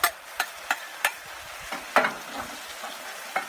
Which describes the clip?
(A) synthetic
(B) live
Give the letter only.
B